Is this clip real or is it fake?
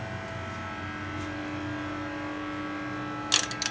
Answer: real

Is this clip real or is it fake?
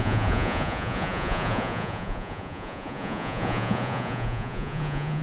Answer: fake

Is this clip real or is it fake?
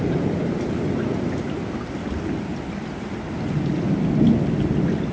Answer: real